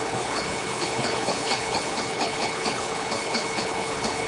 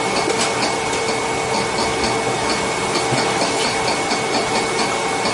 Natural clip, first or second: second